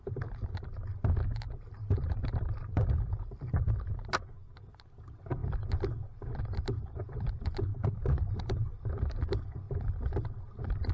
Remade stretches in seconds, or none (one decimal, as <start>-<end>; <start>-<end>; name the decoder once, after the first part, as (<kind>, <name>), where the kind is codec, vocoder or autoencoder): 1.8-3.1 (vocoder, BigVGAN v2); 7.7-9.2